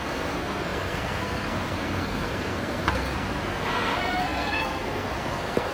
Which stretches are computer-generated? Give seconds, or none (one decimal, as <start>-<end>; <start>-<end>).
0.0-5.7